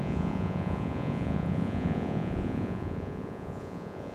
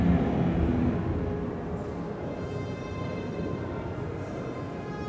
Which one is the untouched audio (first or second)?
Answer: second